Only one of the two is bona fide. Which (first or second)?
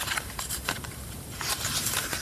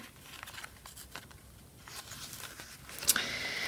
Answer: second